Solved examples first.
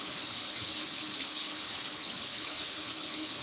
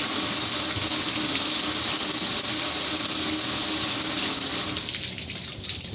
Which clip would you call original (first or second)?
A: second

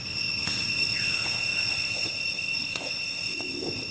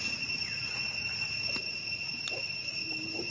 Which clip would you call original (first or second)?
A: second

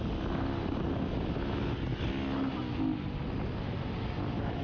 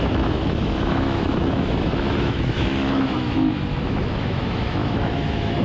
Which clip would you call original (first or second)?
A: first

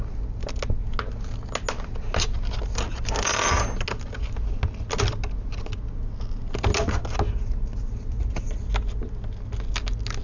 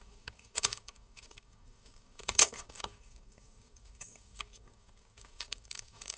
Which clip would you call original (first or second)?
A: first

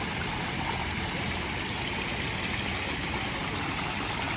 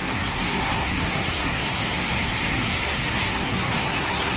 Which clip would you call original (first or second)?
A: first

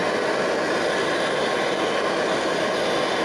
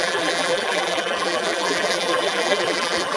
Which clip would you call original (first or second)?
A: first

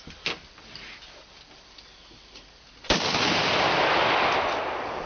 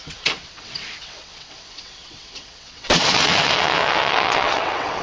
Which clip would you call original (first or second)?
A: first